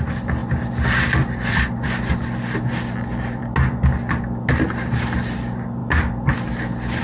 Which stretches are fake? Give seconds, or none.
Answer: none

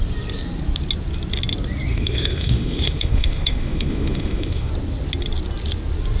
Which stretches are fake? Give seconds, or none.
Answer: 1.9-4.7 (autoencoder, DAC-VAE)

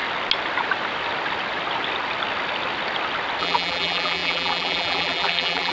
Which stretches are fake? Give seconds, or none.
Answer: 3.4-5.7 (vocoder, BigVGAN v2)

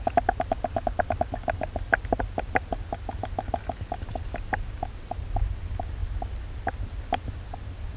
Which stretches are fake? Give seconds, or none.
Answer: none

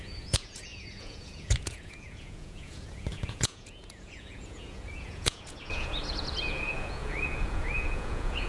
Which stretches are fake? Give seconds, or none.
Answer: 0.0-8.5 (vocoder, Vocos)

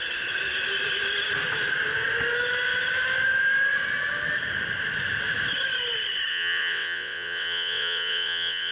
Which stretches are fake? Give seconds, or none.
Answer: 6.3-8.7 (vocoder, WaveNeXt)

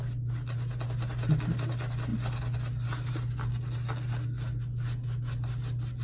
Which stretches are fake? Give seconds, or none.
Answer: none